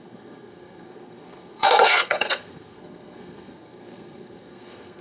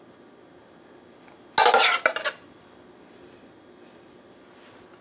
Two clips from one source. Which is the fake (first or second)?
first